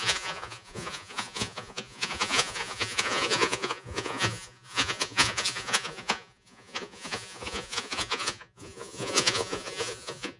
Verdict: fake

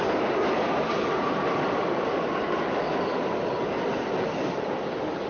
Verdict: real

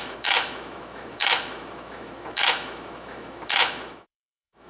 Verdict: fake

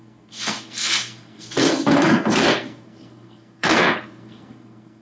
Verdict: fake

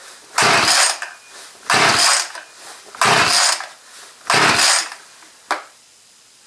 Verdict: real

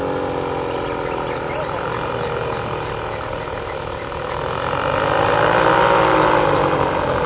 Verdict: real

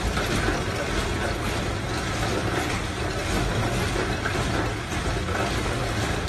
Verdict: real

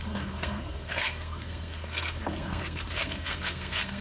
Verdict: fake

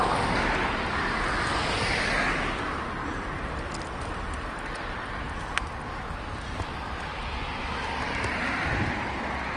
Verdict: real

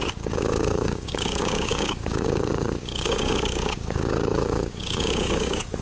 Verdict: fake